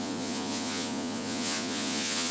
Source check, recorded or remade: remade